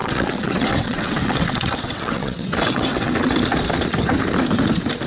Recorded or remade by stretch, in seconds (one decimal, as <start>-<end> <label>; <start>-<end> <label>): 0.0-3.1 remade; 3.1-5.1 recorded